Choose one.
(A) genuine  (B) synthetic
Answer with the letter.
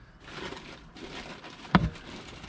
A